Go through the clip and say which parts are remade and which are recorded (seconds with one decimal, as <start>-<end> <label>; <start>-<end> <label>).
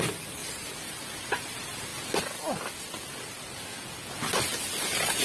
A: 0.0-1.9 remade; 1.9-4.8 recorded; 4.8-5.2 remade